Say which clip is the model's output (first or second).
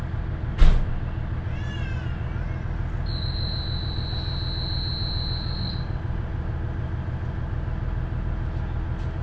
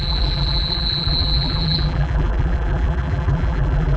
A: second